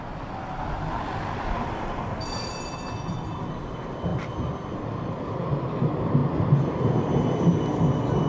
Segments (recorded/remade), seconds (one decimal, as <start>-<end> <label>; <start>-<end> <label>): 0.0-8.3 recorded